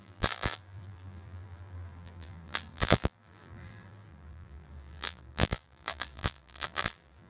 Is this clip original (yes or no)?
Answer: no